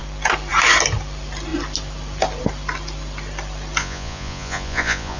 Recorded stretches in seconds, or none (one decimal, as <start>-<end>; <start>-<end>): 0.0-3.8